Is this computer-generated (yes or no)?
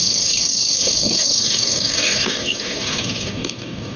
yes